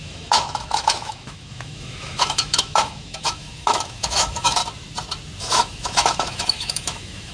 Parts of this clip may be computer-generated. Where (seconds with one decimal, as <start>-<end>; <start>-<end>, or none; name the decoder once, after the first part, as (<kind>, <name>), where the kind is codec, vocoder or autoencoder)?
0.0-4.6 (autoencoder, DAC-VAE); 5.4-7.3

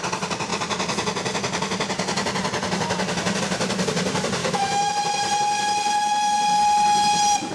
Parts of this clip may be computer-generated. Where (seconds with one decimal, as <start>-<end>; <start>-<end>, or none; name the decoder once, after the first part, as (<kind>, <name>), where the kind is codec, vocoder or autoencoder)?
4.4-4.9 (autoencoder, DAC-VAE)